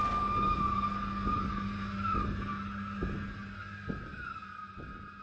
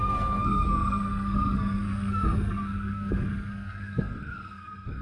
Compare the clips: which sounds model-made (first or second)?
second